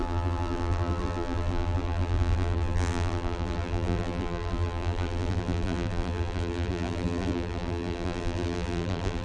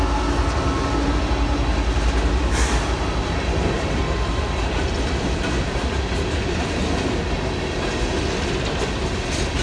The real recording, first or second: second